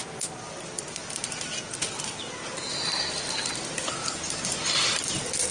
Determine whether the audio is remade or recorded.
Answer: recorded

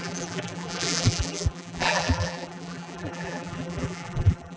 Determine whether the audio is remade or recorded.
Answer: remade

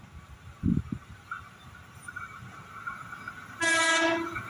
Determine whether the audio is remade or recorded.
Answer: recorded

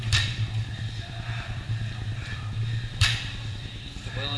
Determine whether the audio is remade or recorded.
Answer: remade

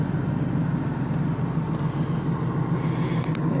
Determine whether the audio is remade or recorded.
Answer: recorded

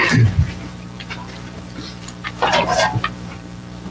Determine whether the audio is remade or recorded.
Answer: remade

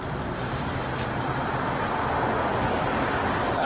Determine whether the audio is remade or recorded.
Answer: remade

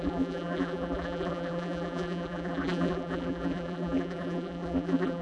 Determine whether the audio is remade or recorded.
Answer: remade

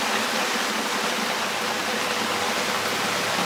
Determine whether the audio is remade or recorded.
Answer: recorded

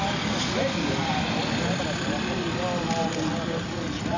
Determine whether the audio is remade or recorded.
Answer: recorded